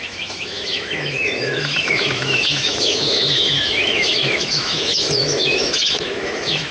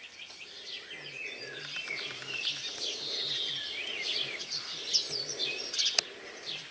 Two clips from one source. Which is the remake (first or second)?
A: first